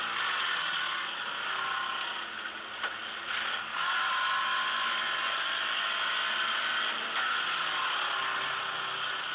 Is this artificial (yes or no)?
no